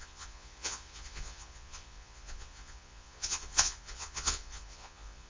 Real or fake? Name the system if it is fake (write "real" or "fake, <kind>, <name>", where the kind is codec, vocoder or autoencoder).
fake, vocoder, Vocos